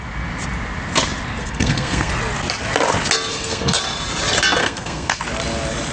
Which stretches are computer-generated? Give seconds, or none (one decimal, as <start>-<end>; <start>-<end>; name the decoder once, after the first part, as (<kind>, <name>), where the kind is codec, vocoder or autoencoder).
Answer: 1.4-2.1 (codec, SNAC); 3.3-3.8; 4.6-5.2